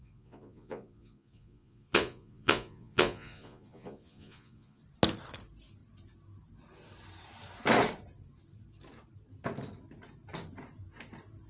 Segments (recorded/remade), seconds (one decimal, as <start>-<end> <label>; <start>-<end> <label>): 0.0-4.8 remade; 4.8-11.5 recorded